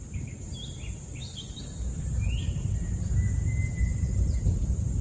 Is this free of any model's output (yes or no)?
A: yes